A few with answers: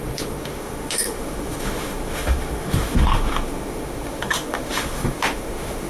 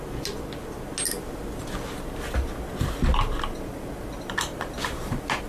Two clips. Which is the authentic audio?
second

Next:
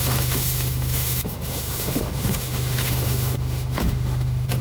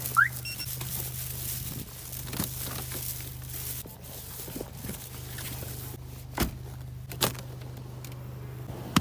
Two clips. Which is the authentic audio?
second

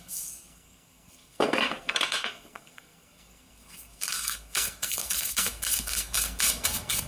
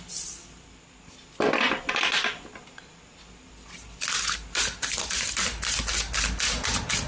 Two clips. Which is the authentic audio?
second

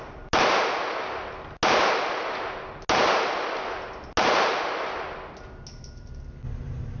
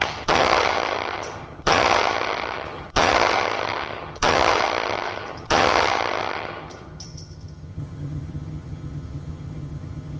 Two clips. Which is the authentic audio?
first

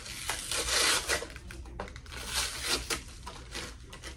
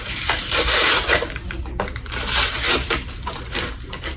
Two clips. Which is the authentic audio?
first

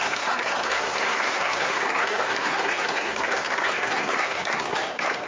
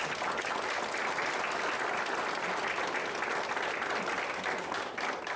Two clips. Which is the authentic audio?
second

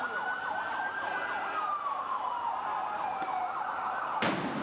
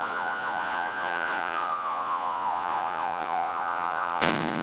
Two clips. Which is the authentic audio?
first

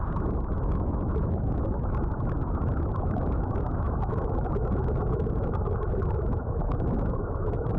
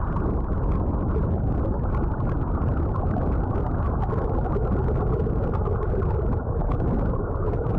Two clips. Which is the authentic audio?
second